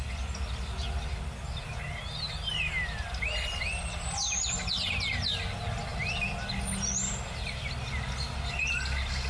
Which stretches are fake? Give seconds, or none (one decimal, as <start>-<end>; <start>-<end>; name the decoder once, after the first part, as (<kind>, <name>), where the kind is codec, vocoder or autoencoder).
none